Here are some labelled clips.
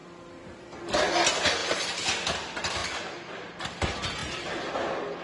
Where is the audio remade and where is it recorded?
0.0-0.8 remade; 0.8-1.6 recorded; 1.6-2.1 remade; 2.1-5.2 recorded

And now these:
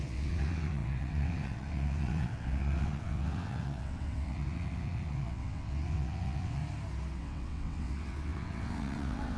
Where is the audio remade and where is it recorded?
0.0-6.6 remade; 6.6-7.2 recorded; 7.2-9.4 remade

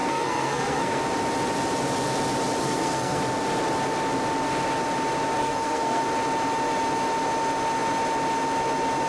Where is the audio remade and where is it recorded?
0.0-1.0 remade; 1.0-2.6 recorded; 2.6-3.2 remade; 3.2-5.4 recorded; 5.4-6.0 remade; 6.0-9.1 recorded